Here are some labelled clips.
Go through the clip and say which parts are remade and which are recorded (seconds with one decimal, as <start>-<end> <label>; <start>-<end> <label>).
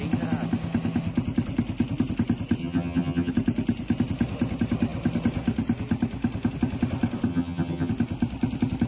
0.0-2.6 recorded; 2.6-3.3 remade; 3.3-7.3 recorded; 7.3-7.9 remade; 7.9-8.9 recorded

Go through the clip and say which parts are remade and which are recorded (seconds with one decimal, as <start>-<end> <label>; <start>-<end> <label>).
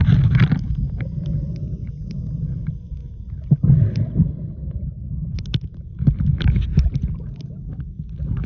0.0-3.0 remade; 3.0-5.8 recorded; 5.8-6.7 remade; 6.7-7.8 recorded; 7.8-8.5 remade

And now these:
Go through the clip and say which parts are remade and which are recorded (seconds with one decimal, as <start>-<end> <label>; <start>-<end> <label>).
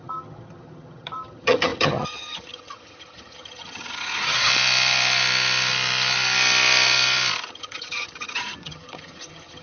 0.0-4.5 remade; 4.5-7.5 recorded; 7.5-9.6 remade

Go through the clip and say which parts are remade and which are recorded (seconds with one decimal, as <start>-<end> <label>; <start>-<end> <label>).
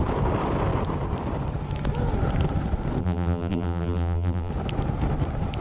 0.0-3.0 recorded; 3.0-4.5 remade; 4.5-5.6 recorded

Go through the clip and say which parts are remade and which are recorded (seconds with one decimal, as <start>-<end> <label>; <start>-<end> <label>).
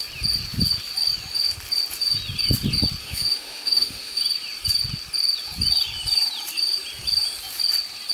0.0-3.0 recorded; 3.0-4.2 remade; 4.2-8.1 recorded